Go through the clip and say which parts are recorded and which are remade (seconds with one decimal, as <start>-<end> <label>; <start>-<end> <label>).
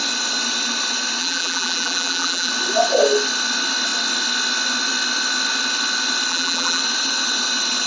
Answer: 0.0-1.2 recorded; 1.2-2.5 remade; 2.5-6.3 recorded; 6.3-6.8 remade; 6.8-7.9 recorded